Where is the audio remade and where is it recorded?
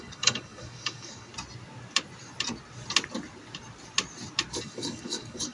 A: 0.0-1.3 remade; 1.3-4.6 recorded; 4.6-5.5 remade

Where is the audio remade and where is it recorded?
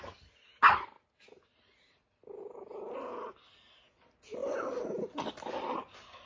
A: 0.0-6.3 recorded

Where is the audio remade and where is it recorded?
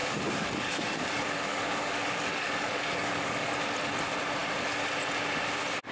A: 0.0-3.5 remade; 3.5-5.9 recorded